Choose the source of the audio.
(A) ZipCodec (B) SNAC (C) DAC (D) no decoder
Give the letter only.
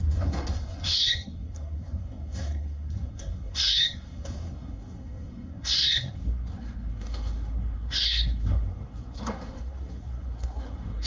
B